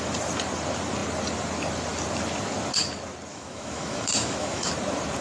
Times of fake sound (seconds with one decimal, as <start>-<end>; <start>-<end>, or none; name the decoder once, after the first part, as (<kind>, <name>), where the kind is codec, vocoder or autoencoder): 3.3-4.7 (autoencoder, DAC-VAE)